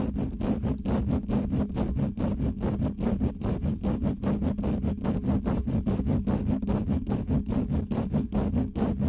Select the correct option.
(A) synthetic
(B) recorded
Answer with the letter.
B